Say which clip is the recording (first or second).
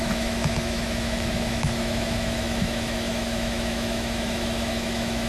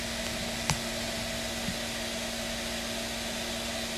second